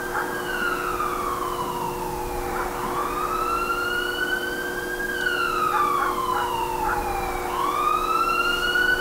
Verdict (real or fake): real